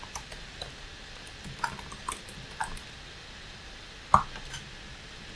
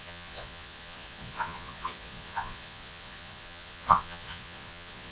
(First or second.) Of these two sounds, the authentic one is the first